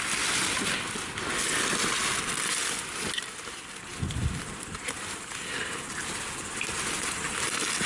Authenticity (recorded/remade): recorded